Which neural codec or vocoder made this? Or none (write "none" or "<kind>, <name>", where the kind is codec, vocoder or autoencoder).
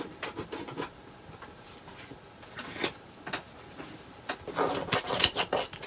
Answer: none